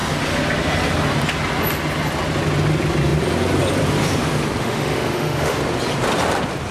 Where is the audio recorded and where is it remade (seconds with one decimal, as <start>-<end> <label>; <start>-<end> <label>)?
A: 0.0-4.6 recorded; 4.6-5.6 remade; 5.6-6.7 recorded